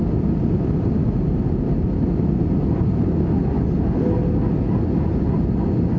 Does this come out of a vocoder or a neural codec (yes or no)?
no